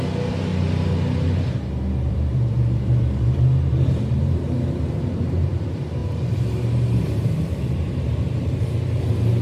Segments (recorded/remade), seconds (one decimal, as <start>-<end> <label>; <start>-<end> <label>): 0.0-0.5 remade; 0.5-2.1 recorded; 2.1-9.4 remade